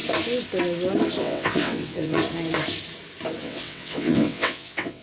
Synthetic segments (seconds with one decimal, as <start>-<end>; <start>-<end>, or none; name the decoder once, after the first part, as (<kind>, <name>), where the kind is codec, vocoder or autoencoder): 1.2-2.2 (vocoder, WaveNeXt); 3.4-5.0